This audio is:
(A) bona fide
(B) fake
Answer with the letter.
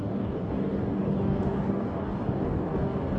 B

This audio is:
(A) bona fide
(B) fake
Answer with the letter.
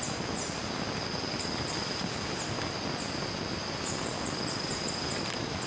A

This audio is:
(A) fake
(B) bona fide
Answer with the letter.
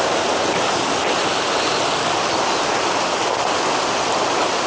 B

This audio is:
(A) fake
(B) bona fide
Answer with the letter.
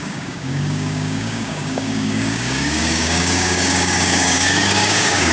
A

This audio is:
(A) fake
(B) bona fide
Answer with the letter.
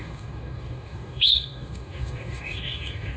A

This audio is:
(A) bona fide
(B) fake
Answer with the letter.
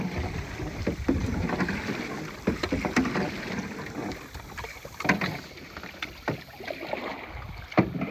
A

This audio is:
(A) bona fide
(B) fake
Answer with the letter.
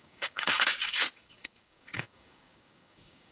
B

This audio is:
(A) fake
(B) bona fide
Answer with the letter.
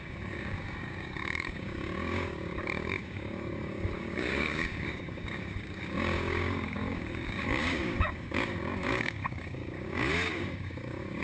A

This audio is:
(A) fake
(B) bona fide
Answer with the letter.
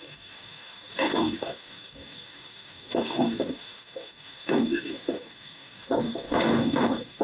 A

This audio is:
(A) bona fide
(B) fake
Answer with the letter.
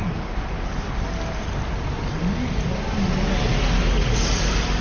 A